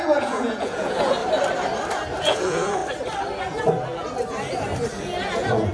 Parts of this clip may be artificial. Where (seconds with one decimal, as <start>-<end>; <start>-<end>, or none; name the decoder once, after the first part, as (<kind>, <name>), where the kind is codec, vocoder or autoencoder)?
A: 0.0-1.2 (vocoder, Vocos); 2.2-2.8; 5.0-5.7